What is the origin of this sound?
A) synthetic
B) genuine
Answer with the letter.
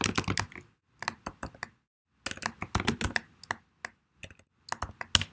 B